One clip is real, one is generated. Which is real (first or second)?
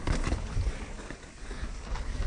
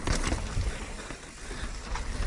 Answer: second